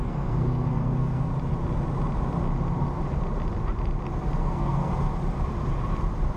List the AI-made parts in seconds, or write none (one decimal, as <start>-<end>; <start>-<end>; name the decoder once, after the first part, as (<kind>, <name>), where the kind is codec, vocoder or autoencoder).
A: 0.0-1.3 (codec, SNAC); 4.4-4.9